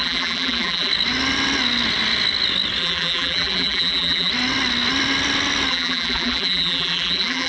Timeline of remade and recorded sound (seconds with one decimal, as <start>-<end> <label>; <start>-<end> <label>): 0.0-0.9 remade; 0.9-2.8 recorded; 2.8-4.3 remade; 4.3-5.7 recorded; 5.7-7.5 remade

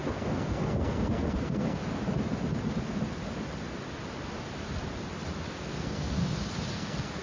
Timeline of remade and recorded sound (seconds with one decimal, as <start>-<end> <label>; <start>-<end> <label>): 0.0-1.8 remade; 1.8-5.5 recorded; 5.5-6.2 remade; 6.2-6.7 recorded; 6.7-7.2 remade